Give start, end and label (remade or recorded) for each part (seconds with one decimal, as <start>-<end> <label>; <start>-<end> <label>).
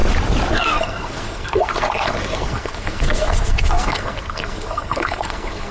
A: 0.0-0.5 recorded; 0.5-5.7 remade